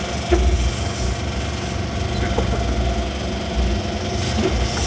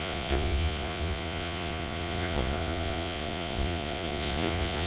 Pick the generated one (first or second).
second